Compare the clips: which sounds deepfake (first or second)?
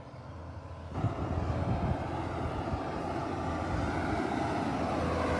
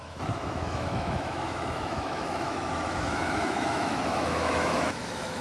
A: second